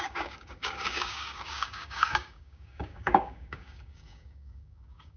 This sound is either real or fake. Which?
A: fake